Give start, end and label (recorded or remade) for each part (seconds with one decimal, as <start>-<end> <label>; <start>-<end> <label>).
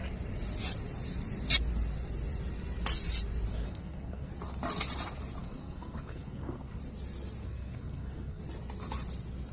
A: 0.0-3.5 recorded; 3.5-4.3 remade; 4.3-5.4 recorded; 5.4-6.8 remade; 6.8-7.4 recorded; 7.4-8.4 remade; 8.4-9.5 recorded